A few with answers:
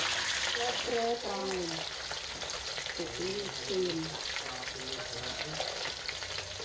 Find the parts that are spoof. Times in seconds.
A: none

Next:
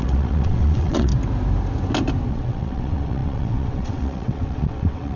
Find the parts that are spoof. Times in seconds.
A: 0.0-1.1 (vocoder, WaveNeXt); 2.3-5.2

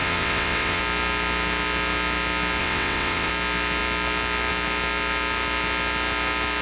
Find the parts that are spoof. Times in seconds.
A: 0.0-0.8 (vocoder, WaveNeXt); 2.6-3.3

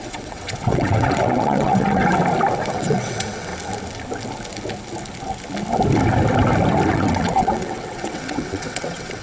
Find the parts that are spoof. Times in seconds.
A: 0.0-2.0 (vocoder, WaveNeXt); 2.7-3.5; 6.9-9.2